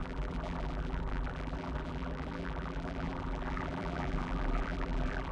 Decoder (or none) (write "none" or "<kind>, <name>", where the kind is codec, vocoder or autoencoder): vocoder, BigVGAN v2